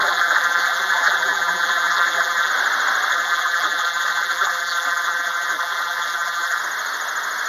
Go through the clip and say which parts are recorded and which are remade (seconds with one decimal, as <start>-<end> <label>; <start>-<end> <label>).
0.0-2.5 remade; 2.5-3.1 recorded; 3.1-6.6 remade; 6.6-7.5 recorded